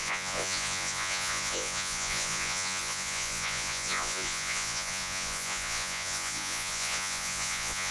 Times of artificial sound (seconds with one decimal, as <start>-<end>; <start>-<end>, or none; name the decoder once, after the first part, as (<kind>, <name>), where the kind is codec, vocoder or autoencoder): 0.0-7.9 (vocoder, Vocos)